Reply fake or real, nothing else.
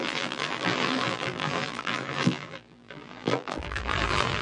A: fake